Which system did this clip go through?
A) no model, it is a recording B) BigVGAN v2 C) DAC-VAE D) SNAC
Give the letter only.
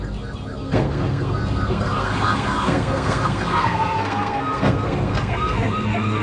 D